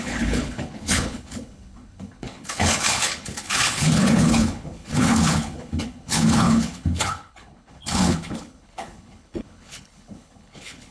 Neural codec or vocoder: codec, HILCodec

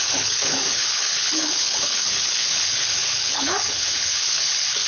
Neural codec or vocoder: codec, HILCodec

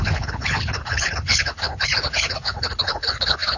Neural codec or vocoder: codec, HILCodec